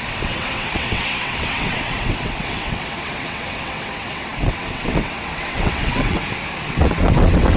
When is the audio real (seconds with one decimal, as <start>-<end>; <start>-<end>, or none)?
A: 6.2-6.7